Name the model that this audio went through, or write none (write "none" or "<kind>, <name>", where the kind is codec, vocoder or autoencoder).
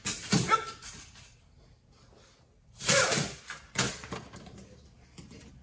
none